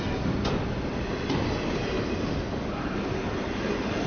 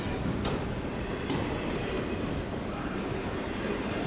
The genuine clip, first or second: first